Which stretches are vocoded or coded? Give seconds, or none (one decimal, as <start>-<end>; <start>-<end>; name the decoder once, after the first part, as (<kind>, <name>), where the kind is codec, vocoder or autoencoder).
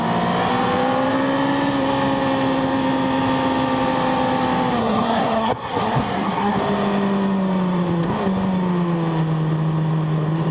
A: 4.8-6.6 (codec, SNAC)